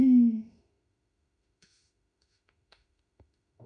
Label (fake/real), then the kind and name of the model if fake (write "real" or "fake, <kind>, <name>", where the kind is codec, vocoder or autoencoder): fake, autoencoder, DAC-VAE